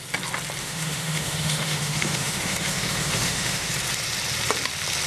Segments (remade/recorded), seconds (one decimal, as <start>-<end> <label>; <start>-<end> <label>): 0.0-0.6 recorded; 0.6-3.7 remade; 3.7-5.1 recorded